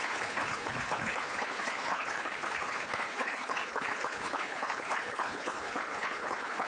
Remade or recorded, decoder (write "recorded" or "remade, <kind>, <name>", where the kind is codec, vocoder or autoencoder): remade, codec, HILCodec